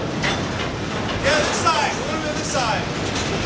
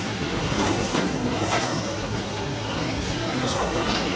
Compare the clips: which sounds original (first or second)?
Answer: first